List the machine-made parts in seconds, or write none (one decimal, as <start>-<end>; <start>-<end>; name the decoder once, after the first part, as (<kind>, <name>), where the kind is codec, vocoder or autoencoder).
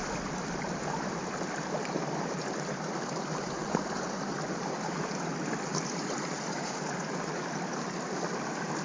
none